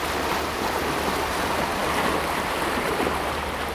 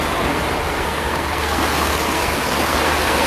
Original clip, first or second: first